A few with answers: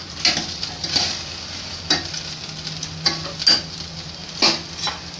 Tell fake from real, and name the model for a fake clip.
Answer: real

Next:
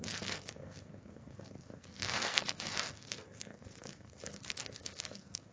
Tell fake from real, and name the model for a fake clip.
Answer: fake, codec, SNAC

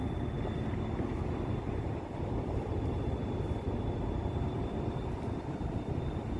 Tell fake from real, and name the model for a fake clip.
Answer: real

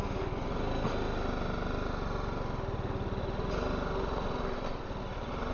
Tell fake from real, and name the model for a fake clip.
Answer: real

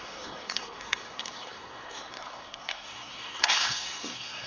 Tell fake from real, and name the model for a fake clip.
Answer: fake, codec, SNAC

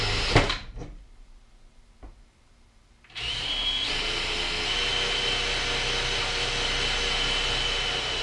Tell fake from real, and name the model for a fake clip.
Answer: real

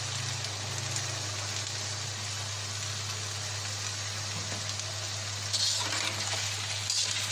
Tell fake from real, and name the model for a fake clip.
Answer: real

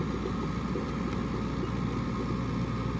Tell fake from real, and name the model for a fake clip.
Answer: real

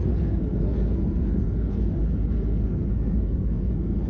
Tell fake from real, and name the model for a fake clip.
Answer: fake, codec, SNAC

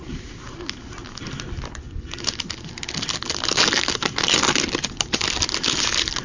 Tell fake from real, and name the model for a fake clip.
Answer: real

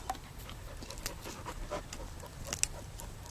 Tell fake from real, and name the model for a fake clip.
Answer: real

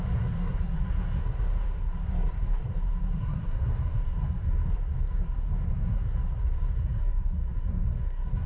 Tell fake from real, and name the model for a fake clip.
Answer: fake, codec, SNAC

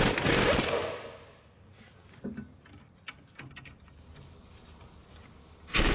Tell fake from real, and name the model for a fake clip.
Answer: real